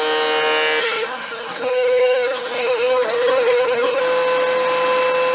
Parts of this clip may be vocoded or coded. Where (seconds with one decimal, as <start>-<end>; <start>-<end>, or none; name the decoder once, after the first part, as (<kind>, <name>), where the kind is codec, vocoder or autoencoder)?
0.8-4.0 (codec, SNAC)